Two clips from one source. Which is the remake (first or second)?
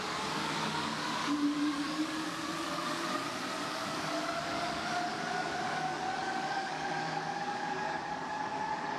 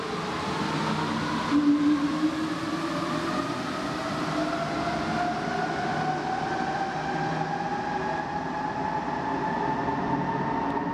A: first